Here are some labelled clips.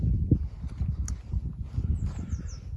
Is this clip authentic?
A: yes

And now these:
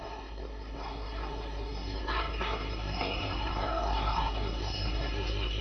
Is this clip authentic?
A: no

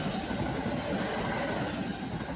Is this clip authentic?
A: yes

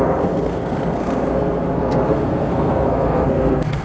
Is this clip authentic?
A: no